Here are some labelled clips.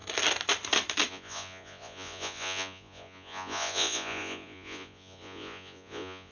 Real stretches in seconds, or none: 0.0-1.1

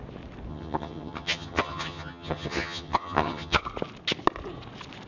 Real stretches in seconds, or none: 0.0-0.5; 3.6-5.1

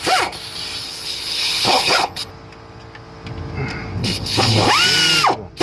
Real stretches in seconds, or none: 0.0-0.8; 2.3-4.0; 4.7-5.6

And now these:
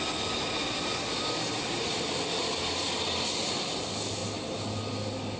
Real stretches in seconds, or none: 0.0-5.4

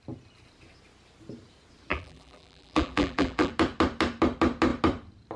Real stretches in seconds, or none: 0.0-1.9; 3.5-5.4